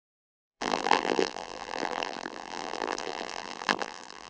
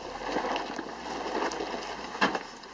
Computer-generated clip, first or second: first